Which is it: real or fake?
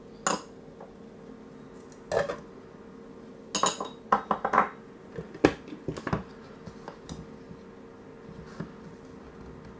real